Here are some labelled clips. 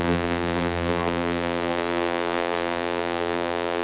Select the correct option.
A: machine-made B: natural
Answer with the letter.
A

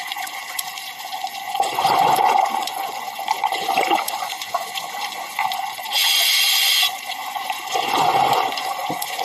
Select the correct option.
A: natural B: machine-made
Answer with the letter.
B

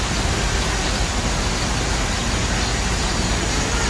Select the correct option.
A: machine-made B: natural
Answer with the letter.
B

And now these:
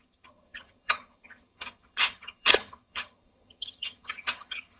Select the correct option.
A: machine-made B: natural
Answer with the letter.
A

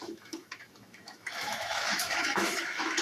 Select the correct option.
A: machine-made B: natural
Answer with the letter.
A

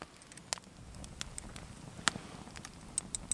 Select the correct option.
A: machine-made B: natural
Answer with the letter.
B